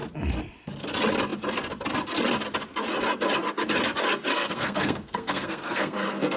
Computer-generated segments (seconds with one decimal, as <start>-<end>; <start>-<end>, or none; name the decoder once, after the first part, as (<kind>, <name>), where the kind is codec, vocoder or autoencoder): 4.3-6.4 (codec, SNAC)